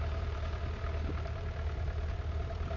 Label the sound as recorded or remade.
remade